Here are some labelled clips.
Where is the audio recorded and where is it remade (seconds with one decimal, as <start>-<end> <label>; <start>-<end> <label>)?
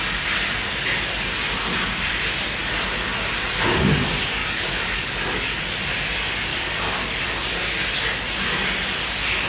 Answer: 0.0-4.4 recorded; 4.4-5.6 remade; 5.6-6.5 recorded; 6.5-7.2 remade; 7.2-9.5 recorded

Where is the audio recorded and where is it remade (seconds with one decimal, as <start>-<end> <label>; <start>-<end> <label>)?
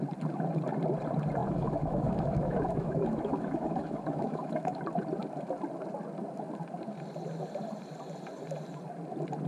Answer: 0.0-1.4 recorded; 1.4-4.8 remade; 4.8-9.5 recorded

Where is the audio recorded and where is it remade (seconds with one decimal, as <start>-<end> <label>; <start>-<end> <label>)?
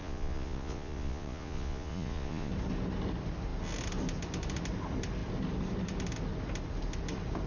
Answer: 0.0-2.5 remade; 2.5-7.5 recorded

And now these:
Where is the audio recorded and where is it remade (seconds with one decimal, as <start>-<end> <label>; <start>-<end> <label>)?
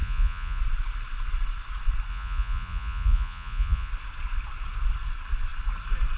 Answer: 0.0-0.6 remade; 0.6-2.1 recorded; 2.1-3.9 remade; 3.9-6.2 recorded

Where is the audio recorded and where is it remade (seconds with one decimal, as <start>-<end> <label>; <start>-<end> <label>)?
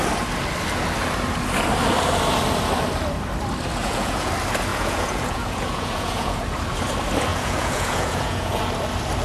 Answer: 0.0-3.8 recorded; 3.8-4.3 remade; 4.3-4.7 recorded; 4.7-6.4 remade; 6.4-7.3 recorded; 7.3-8.6 remade; 8.6-9.2 recorded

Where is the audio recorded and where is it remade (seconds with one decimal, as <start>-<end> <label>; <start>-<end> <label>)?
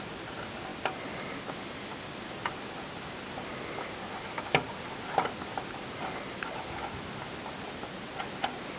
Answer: 0.0-8.8 recorded